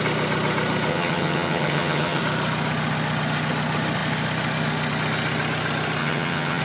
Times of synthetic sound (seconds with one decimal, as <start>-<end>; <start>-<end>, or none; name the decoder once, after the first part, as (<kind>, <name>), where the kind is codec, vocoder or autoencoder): 0.9-2.2 (vocoder, HiFi-GAN); 6.0-6.6